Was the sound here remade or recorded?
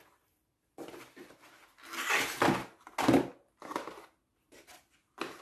recorded